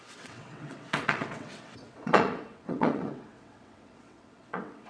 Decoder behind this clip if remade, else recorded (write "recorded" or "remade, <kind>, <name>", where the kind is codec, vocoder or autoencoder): remade, vocoder, WaveNeXt